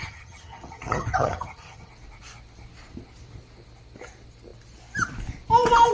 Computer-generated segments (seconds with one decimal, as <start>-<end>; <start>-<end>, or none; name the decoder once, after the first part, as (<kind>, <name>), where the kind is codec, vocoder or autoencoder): 0.0-1.9 (vocoder, HiFi-GAN)